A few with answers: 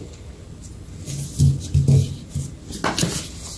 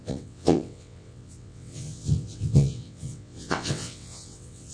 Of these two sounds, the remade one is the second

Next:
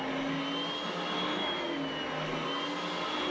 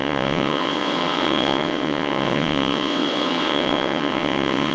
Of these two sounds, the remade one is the second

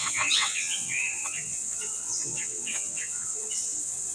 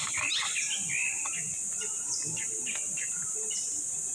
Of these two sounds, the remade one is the first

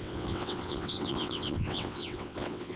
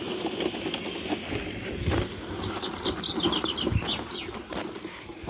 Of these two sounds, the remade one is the first